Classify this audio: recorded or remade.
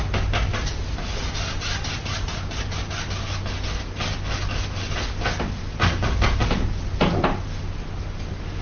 recorded